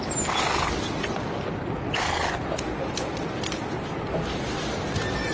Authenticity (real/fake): real